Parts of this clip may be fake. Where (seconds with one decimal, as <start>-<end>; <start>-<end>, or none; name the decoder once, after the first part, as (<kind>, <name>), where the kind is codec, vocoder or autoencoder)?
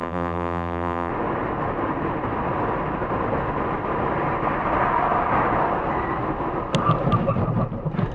0.0-1.1 (vocoder, BigVGAN v2)